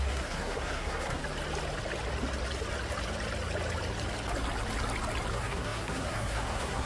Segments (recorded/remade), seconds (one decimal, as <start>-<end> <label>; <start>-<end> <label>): 0.0-1.2 remade; 1.2-5.3 recorded; 5.3-6.9 remade